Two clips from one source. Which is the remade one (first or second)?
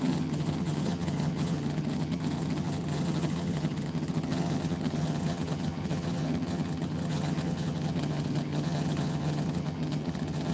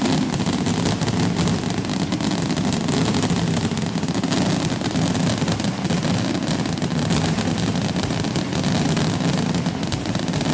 first